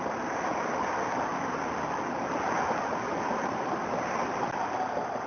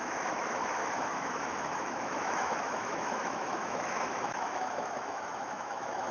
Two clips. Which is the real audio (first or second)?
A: first